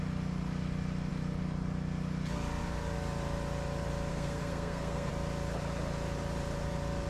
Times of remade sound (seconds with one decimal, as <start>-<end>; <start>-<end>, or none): 4.1-5.1